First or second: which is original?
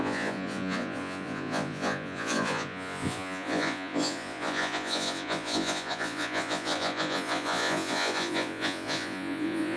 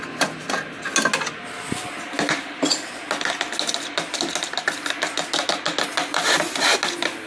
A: second